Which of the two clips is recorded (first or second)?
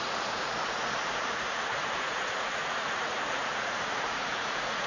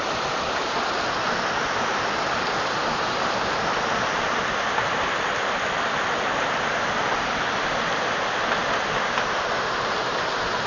second